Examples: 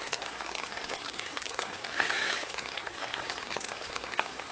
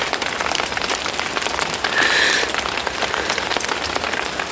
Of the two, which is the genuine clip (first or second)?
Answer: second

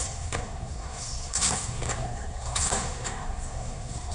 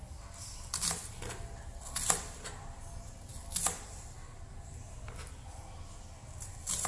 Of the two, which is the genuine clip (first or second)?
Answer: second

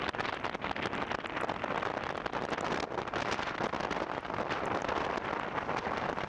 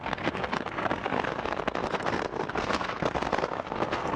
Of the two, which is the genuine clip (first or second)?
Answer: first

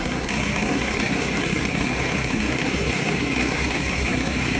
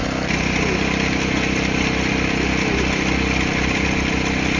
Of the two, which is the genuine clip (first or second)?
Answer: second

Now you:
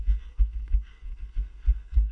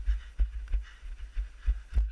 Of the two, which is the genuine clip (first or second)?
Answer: second